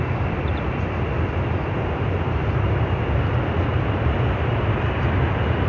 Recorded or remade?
remade